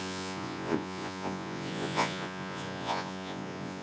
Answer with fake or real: fake